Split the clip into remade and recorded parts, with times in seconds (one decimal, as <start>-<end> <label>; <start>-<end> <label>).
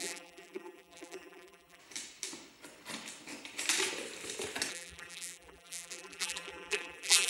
0.0-1.8 remade; 1.8-4.7 recorded; 4.7-7.3 remade